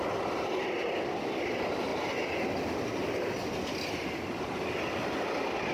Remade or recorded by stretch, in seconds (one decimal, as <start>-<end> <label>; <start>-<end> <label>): 0.0-5.7 recorded